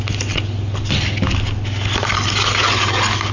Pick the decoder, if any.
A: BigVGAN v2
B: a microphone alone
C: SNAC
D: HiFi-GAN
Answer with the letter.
B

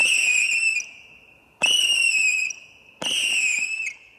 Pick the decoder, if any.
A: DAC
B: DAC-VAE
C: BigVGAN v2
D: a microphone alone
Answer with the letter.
D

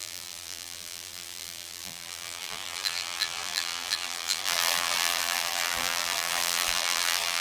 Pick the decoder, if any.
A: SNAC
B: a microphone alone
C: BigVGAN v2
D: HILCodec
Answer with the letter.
C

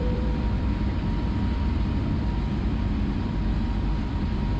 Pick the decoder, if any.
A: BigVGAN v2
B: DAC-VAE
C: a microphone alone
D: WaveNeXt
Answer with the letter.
A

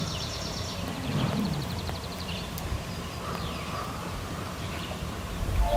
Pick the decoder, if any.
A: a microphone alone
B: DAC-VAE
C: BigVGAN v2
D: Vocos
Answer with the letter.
C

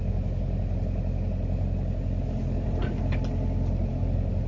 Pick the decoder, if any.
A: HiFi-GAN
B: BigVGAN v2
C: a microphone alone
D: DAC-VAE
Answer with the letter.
C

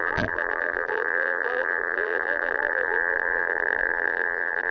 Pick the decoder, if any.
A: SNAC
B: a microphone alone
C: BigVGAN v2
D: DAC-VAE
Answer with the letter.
C